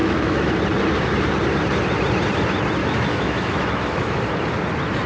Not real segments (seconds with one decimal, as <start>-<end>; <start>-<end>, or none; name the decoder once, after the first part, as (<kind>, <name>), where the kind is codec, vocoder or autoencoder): 0.0-0.5 (autoencoder, DAC-VAE); 2.8-4.2